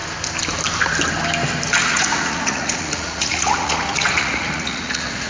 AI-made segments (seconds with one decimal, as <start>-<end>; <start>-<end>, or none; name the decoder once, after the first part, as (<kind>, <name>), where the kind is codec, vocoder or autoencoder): 1.8-5.3 (vocoder, Vocos)